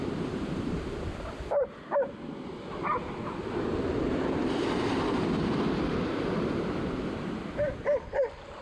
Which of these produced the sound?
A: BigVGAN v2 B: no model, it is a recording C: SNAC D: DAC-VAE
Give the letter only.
A